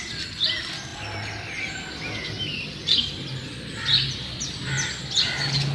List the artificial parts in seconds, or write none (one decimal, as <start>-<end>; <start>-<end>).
none